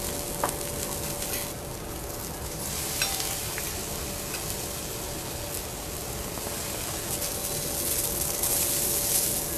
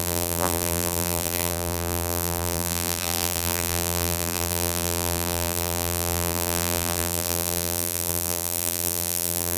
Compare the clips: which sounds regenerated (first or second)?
second